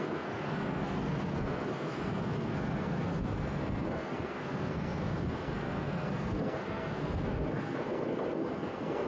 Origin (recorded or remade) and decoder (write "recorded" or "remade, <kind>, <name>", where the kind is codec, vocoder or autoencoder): remade, codec, SNAC